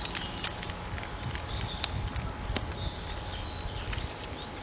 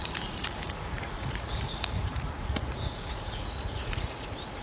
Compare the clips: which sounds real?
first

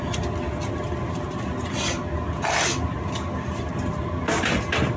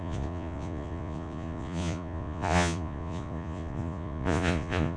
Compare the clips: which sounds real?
first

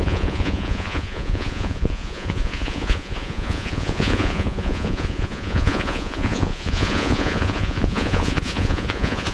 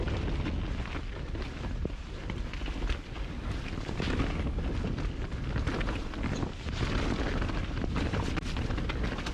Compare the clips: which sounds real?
second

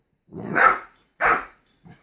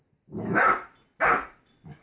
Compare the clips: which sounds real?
second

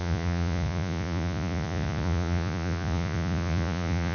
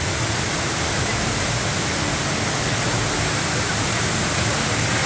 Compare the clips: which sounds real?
second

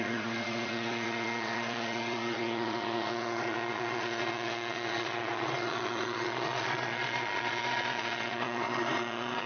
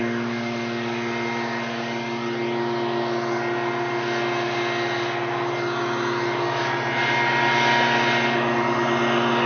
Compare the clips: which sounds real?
second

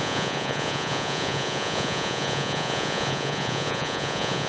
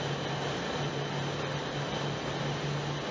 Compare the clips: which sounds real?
second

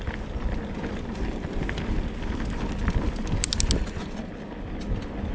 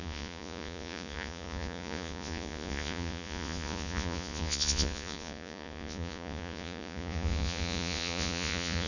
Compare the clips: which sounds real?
first